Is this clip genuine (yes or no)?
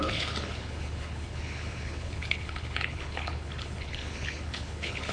no